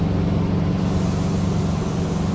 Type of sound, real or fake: real